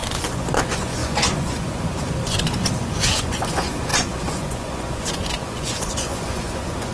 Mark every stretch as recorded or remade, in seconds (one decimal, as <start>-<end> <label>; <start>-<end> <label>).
0.0-6.9 remade